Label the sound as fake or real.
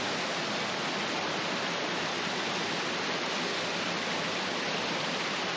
real